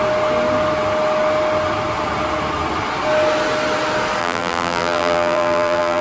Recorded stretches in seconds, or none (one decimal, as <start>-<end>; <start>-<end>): 0.0-4.2